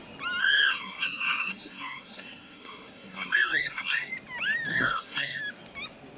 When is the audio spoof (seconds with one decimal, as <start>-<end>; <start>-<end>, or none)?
0.4-4.1; 4.7-5.4